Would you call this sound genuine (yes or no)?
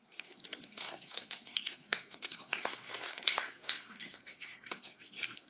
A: no